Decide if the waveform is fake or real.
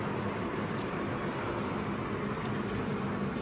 real